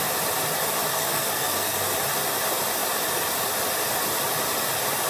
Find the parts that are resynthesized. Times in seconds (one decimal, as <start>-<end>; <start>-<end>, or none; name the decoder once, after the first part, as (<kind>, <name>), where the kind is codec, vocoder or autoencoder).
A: 0.9-1.8 (codec, SNAC)